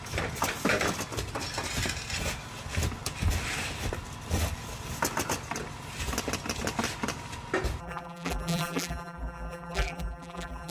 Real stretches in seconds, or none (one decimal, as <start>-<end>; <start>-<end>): 0.0-7.8

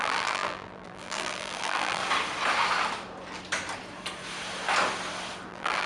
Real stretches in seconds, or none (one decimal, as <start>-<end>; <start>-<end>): 2.0-5.5